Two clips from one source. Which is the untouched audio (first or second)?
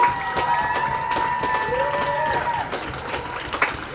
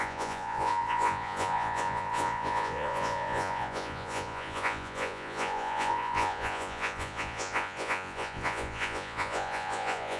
first